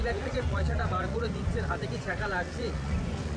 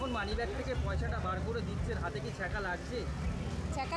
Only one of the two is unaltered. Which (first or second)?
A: second